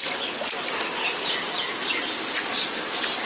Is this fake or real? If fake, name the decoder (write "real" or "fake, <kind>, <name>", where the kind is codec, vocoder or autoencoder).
real